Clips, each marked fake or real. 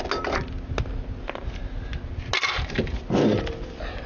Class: real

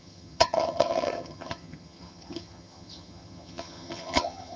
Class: fake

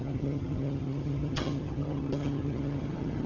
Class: fake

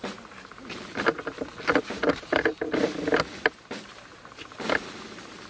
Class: real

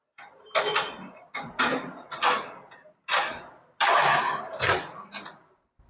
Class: real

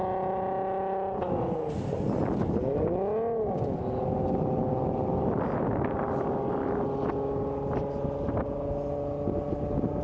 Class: real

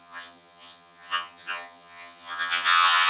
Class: fake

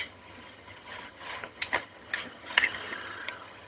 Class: fake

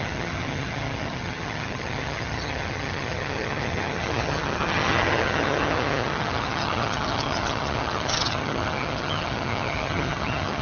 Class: fake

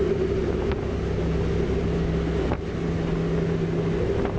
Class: real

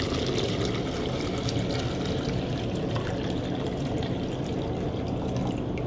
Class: real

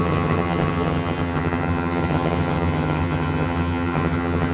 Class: fake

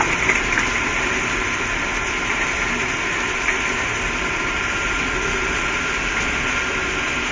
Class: real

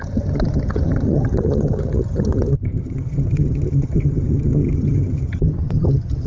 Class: fake